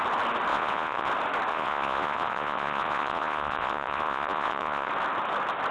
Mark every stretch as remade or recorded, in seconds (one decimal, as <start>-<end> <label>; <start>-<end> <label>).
0.0-0.5 recorded; 0.5-1.1 remade; 1.1-1.5 recorded; 1.5-4.9 remade; 4.9-5.7 recorded

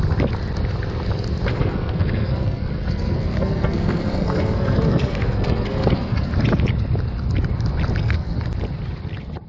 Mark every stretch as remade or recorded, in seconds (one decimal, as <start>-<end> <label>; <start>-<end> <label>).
0.0-1.5 recorded; 1.5-6.3 remade; 6.3-8.0 recorded; 8.0-8.5 remade; 8.5-9.5 recorded

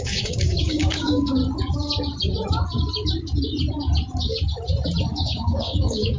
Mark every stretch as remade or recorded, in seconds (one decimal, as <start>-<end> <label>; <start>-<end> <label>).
0.0-1.4 remade; 1.4-5.1 recorded; 5.1-6.2 remade

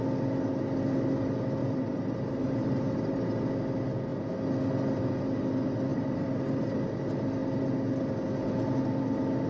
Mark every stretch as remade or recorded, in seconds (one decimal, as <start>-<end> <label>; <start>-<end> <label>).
0.0-1.6 recorded; 1.6-3.4 remade; 3.4-5.9 recorded; 5.9-6.8 remade; 6.8-9.5 recorded

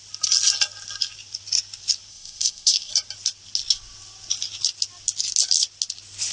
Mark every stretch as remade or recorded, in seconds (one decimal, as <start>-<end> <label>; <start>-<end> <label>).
0.0-2.1 recorded; 2.1-2.9 remade; 2.9-6.3 recorded

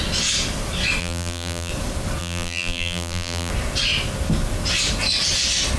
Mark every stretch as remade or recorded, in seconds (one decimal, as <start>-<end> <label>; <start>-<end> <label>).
0.0-1.0 recorded; 1.0-1.7 remade; 1.7-2.2 recorded; 2.2-3.5 remade; 3.5-5.8 recorded